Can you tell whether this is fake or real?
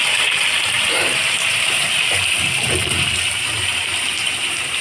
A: fake